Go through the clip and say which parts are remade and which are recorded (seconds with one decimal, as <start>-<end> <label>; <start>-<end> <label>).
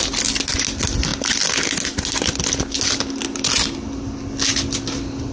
0.0-5.3 recorded